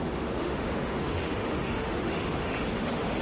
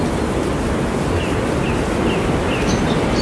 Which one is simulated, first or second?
first